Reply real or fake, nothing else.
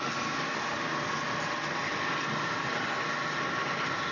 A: real